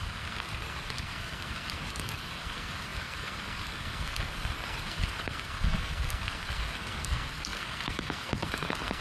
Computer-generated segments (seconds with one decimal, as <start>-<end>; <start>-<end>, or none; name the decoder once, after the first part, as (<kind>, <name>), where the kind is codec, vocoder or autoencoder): 0.0-9.0 (codec, SNAC)